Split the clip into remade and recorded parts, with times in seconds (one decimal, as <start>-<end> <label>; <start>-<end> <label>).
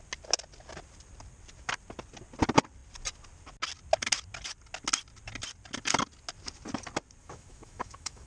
0.0-7.2 recorded; 7.2-8.3 remade